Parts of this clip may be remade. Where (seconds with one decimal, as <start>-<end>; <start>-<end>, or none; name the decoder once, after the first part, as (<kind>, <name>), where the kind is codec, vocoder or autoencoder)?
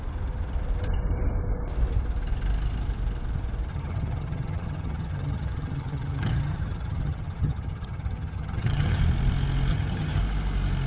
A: 3.7-9.0 (vocoder, HiFi-GAN); 9.7-10.2